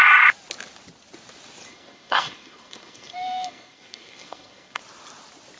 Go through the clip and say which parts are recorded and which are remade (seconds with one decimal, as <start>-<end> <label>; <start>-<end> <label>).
0.0-1.7 recorded; 1.7-4.8 remade; 4.8-5.6 recorded